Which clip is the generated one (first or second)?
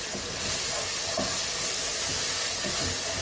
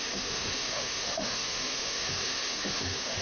second